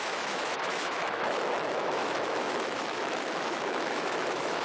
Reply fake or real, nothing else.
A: fake